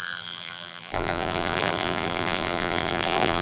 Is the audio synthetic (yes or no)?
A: yes